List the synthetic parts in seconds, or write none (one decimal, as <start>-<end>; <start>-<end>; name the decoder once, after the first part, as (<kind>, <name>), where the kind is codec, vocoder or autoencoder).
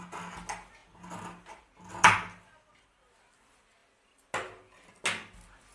none